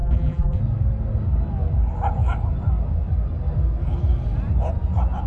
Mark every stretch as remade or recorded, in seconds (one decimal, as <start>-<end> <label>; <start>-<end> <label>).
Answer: 0.0-0.6 remade; 0.6-5.3 recorded